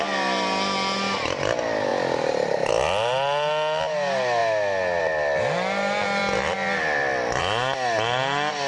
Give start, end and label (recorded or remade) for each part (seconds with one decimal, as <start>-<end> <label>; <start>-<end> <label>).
0.0-8.7 recorded